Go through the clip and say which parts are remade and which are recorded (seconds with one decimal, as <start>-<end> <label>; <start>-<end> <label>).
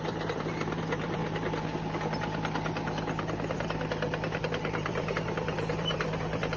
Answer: 0.0-1.2 remade; 1.2-4.4 recorded; 4.4-6.6 remade